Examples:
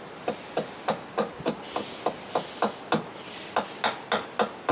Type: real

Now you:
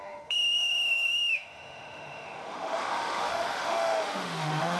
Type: fake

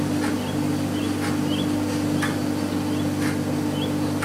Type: real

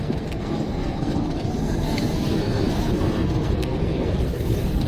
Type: fake